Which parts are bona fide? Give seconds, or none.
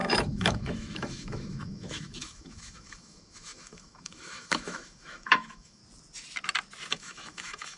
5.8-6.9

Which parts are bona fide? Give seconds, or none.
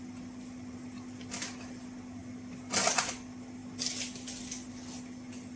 0.0-5.6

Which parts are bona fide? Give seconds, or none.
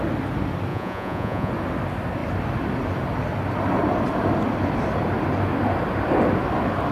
0.0-0.7; 1.5-6.9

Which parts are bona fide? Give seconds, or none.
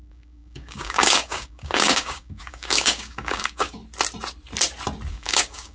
3.8-5.1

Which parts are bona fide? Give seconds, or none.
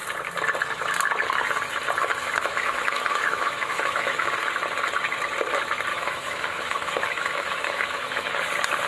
0.0-2.0; 4.5-5.9; 8.3-8.9